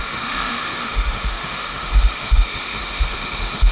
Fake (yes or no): yes